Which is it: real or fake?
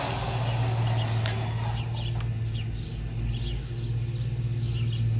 real